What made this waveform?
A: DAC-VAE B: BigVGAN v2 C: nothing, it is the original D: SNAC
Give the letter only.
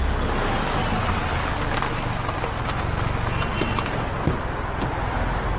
C